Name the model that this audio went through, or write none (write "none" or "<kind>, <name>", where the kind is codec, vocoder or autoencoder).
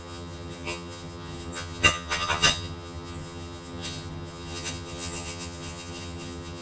vocoder, HiFi-GAN